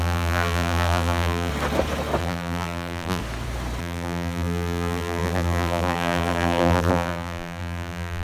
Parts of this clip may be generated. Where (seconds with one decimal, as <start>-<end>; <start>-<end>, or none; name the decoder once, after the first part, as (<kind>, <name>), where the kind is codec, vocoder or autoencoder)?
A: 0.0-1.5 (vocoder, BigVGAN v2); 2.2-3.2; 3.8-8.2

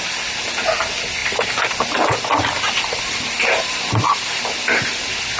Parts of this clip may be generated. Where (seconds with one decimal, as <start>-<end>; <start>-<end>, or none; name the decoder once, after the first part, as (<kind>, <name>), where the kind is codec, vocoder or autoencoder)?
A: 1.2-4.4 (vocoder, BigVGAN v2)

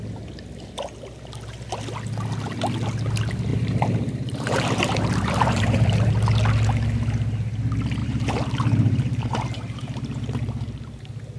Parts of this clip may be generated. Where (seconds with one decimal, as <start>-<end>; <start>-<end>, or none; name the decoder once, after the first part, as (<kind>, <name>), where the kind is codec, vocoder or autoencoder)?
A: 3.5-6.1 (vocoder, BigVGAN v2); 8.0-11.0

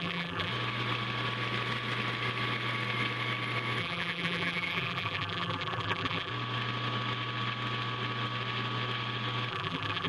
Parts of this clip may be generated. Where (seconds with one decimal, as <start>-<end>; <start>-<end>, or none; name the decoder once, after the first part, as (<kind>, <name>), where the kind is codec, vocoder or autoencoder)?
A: 0.0-0.5 (vocoder, BigVGAN v2); 3.8-6.3; 9.5-10.1

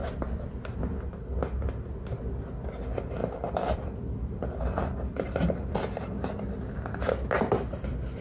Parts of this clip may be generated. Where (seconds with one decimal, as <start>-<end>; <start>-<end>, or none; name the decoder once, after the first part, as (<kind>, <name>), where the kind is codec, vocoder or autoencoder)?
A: 3.2-5.7 (vocoder, BigVGAN v2)